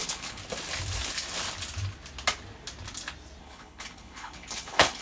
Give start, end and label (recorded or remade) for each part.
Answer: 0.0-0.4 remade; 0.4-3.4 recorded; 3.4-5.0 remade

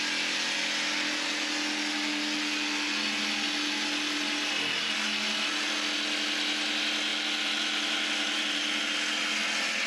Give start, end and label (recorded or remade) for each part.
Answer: 0.0-7.1 recorded; 7.1-8.8 remade; 8.8-9.9 recorded

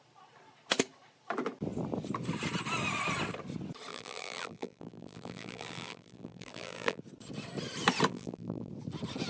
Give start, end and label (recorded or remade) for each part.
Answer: 0.0-3.9 recorded; 3.9-7.0 remade; 7.0-8.1 recorded; 8.1-8.7 remade; 8.7-9.3 recorded

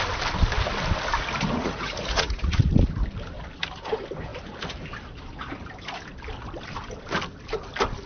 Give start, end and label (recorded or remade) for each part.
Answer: 0.0-1.6 recorded; 1.6-2.7 remade; 2.7-8.1 recorded

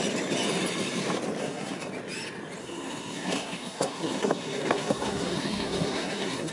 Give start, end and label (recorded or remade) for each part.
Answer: 0.0-1.4 recorded; 1.4-1.9 remade; 1.9-2.6 recorded; 2.6-6.5 remade